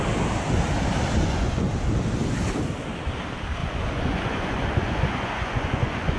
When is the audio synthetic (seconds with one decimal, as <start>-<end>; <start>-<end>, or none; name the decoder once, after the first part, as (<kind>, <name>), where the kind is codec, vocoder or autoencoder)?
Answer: 1.2-1.7 (vocoder, Vocos); 3.6-6.2